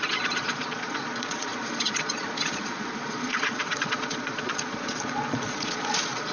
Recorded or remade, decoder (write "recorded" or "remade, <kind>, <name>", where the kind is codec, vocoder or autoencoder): remade, vocoder, Vocos